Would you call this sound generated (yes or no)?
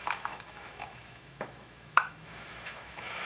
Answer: yes